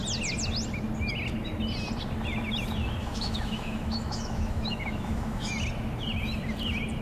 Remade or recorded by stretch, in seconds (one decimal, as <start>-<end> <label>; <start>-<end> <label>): 0.0-3.0 recorded; 3.0-5.5 remade; 5.5-7.0 recorded